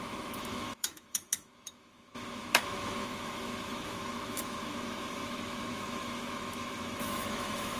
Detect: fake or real fake